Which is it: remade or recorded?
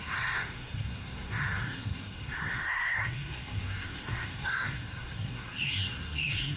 remade